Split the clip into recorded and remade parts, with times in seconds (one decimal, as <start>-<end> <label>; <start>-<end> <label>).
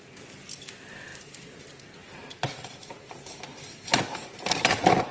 0.0-1.1 recorded; 1.1-1.6 remade; 1.6-5.1 recorded